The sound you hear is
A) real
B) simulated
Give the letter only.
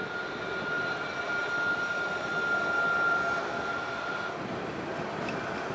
A